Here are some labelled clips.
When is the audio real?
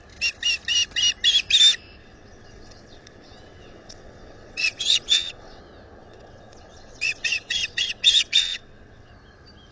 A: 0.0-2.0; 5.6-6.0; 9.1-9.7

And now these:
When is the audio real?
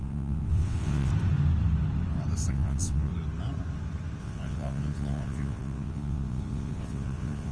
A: 1.1-2.5; 3.1-4.2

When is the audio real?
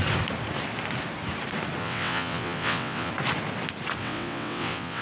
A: 0.0-1.8; 3.1-4.0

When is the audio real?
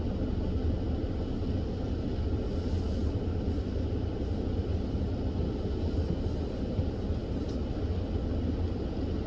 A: 0.0-9.3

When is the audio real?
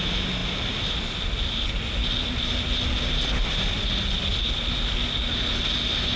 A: 0.0-6.2